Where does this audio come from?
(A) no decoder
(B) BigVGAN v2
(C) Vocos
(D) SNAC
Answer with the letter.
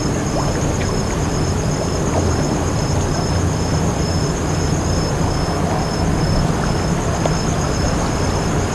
A